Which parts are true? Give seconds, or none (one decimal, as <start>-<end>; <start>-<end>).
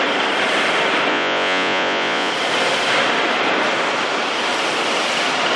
0.0-1.1; 2.3-5.6